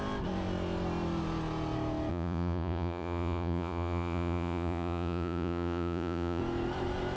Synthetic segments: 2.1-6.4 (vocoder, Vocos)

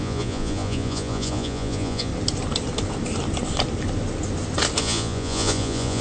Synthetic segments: 0.0-2.1 (vocoder, Vocos); 4.8-6.0